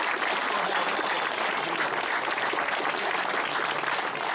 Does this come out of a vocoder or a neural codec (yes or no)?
no